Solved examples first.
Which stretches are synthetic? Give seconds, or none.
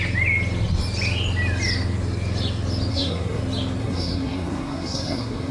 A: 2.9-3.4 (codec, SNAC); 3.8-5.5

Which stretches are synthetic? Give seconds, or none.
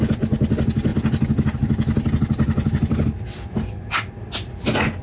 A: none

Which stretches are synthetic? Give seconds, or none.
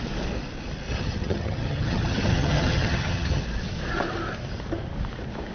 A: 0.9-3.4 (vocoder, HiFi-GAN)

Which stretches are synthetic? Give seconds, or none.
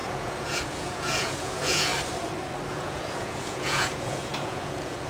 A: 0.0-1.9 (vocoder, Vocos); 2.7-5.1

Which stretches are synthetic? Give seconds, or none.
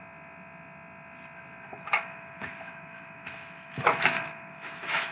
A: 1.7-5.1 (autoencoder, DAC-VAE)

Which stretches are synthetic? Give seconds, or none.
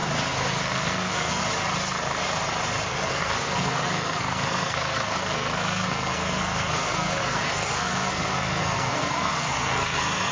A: 0.6-1.4 (codec, SNAC); 2.9-10.3